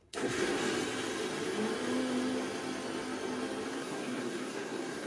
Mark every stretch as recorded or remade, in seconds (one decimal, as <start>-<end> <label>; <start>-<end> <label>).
0.0-0.6 remade; 0.6-3.7 recorded; 3.7-5.1 remade